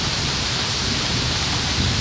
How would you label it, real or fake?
fake